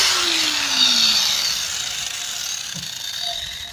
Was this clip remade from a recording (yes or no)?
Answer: yes